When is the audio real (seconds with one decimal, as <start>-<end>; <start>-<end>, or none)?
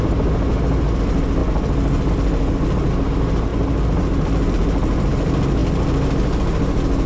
0.0-7.1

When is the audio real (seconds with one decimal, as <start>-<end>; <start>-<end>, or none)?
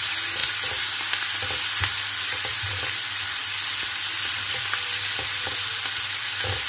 0.0-6.7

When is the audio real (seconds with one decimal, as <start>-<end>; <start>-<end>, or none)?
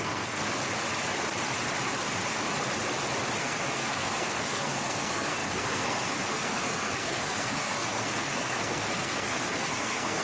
0.4-3.4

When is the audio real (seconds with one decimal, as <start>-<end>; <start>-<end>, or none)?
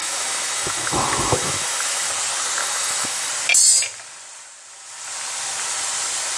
2.1-2.6; 3.3-6.4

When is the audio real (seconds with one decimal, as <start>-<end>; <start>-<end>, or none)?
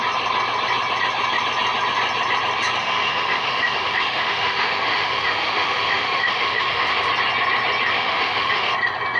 0.0-2.8; 7.1-7.9; 8.7-9.2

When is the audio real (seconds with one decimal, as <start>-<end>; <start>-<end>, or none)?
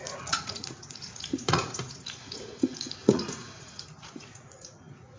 none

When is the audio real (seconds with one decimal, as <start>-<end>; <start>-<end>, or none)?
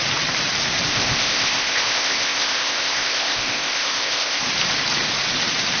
0.0-0.9; 4.4-5.8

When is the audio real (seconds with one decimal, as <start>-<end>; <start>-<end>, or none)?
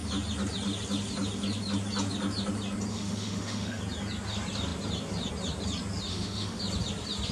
0.0-2.9; 3.8-6.1; 6.6-7.3